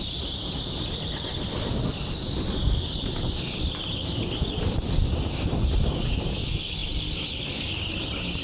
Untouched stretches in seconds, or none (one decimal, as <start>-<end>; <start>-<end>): 0.0-8.4